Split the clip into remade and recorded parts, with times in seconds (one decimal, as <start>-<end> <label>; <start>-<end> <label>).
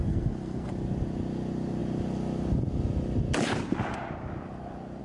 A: 0.0-0.7 remade; 0.7-5.0 recorded